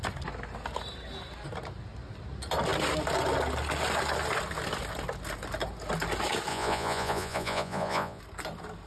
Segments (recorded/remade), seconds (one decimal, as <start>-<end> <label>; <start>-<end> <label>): 0.0-6.5 recorded; 6.5-8.2 remade; 8.2-8.9 recorded